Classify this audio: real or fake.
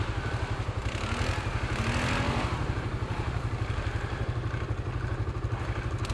real